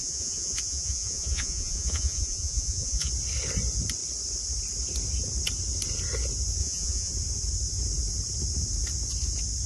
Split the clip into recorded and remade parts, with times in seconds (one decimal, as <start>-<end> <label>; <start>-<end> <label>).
0.0-3.1 remade; 3.1-6.6 recorded; 6.6-7.1 remade; 7.1-9.7 recorded